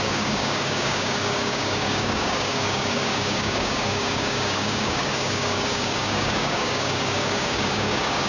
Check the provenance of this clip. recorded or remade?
remade